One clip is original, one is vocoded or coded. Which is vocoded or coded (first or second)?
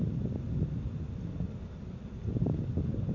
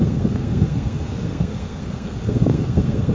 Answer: second